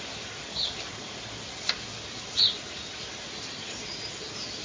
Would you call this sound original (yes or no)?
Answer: yes